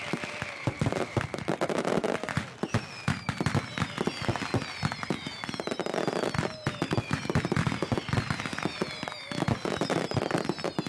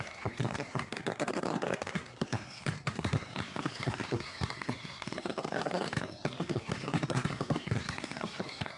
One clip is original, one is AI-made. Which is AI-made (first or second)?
second